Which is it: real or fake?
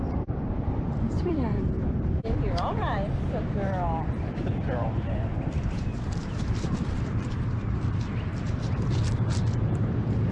fake